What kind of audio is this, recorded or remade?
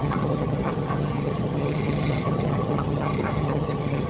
remade